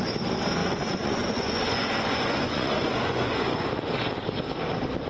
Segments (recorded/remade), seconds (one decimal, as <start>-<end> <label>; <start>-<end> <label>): 0.0-0.6 recorded; 0.6-3.7 remade; 3.7-5.1 recorded